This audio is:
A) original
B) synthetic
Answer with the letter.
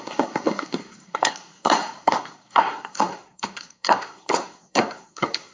B